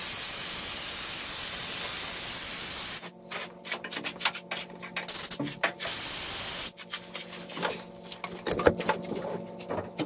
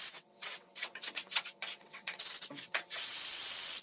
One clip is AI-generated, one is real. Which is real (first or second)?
first